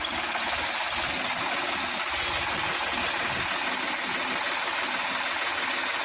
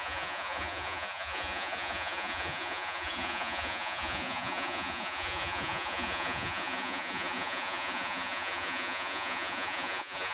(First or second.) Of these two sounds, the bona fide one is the first